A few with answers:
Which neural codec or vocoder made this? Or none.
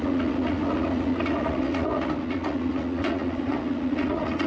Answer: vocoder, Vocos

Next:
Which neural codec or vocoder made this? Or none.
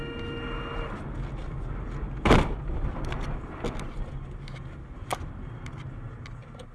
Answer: none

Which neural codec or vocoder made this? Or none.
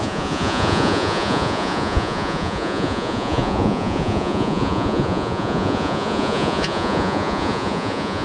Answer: vocoder, Vocos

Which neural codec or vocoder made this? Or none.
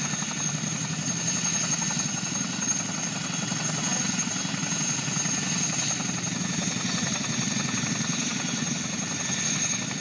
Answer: none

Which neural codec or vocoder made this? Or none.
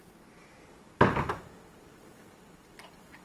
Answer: none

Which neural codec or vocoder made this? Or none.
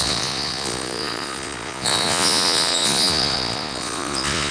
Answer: vocoder, Vocos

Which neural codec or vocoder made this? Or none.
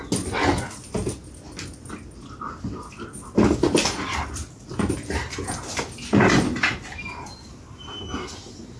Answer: none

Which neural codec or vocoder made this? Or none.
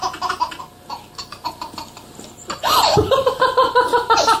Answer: none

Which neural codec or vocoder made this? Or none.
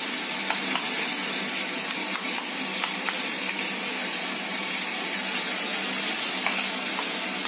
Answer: none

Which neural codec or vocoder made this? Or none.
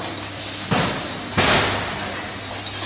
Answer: none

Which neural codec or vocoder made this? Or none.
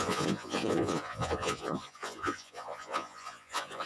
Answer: vocoder, Vocos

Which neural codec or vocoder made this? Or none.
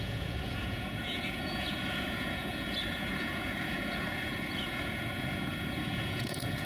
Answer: vocoder, Vocos